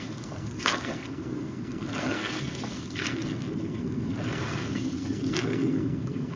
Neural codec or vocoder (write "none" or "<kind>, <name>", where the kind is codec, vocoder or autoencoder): codec, SNAC